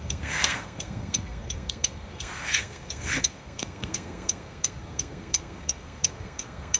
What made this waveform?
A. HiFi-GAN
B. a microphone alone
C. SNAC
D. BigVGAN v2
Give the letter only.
C